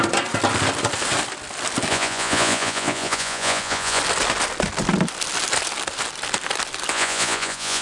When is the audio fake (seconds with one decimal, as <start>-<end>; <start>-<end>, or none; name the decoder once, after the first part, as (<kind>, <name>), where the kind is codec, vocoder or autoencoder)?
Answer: 1.9-4.0 (vocoder, Vocos); 6.9-7.8